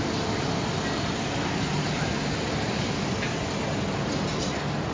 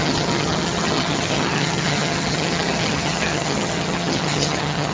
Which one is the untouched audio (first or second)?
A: first